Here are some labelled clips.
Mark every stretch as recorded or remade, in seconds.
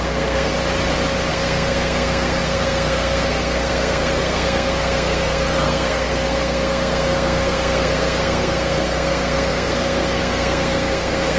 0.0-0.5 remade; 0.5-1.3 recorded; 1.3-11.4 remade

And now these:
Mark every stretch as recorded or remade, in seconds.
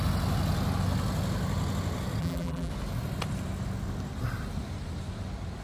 0.0-2.2 recorded; 2.2-2.7 remade; 2.7-5.6 recorded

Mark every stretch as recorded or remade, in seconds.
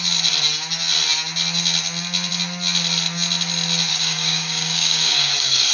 0.0-3.9 recorded; 3.9-5.7 remade